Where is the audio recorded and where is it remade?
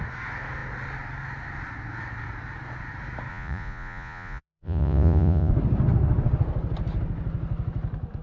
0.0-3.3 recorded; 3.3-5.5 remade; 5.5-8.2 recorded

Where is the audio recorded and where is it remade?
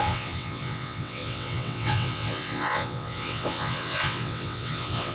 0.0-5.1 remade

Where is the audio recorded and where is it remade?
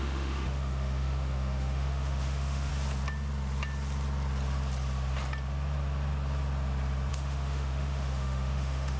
0.0-2.7 remade; 2.7-7.1 recorded; 7.1-9.0 remade